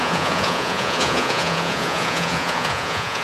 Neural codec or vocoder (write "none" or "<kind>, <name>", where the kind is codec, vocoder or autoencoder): vocoder, Vocos